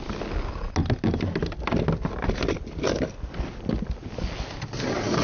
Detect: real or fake real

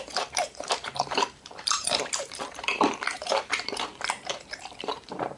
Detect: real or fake fake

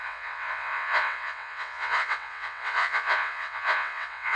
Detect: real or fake fake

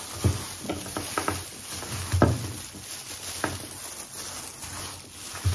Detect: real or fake real